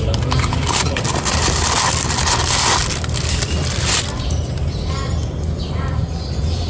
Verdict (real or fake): real